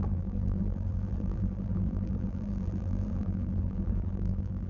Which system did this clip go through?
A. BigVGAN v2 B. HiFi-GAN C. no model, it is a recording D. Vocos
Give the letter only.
A